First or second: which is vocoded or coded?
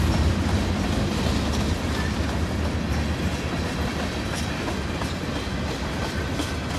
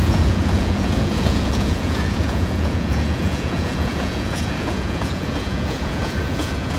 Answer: second